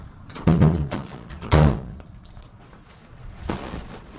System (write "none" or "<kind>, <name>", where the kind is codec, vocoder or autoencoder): vocoder, Vocos